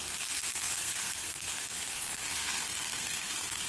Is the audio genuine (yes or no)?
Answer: no